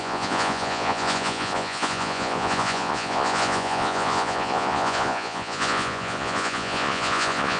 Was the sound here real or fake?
fake